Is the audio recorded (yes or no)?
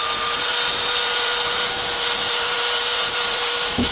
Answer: no